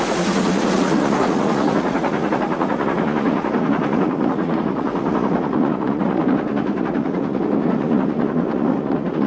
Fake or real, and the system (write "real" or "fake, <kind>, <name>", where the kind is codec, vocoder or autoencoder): fake, vocoder, Vocos